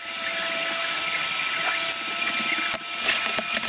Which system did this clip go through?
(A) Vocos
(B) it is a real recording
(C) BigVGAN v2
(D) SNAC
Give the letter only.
B